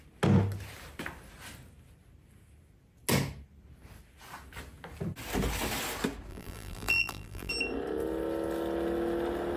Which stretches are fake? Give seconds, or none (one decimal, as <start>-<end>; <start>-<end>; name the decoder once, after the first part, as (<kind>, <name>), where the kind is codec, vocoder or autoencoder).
6.3-7.5 (vocoder, BigVGAN v2)

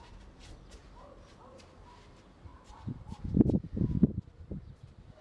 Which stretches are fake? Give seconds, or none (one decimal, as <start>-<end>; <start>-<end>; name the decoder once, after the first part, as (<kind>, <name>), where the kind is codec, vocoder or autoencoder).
0.8-1.3 (vocoder, BigVGAN v2); 2.5-3.2

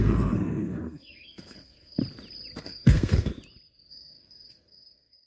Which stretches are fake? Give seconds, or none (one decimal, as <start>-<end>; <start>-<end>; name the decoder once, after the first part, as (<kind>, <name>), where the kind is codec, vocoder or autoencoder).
0.0-2.0 (codec, SNAC); 2.6-3.3; 3.9-5.3

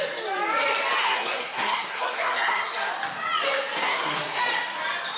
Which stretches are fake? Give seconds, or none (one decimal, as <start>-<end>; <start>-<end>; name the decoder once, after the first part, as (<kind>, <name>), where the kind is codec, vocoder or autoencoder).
1.0-2.9 (codec, SNAC); 3.8-4.4

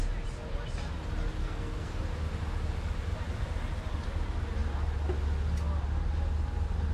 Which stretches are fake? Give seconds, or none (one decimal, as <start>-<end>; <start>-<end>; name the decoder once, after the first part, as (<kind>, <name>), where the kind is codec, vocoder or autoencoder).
1.4-2.0 (codec, SNAC)

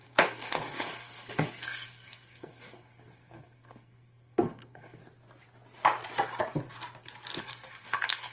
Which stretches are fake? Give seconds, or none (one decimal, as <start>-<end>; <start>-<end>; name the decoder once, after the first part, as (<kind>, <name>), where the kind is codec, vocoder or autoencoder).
0.0-5.0 (codec, SNAC); 7.4-8.3

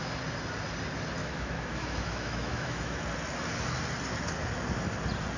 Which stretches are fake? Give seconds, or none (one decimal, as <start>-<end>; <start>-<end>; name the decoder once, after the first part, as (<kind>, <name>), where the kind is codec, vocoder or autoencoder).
1.2-2.9 (autoencoder, DAC-VAE)